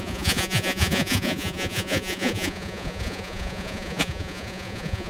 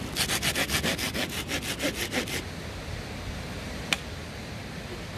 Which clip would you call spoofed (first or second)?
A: first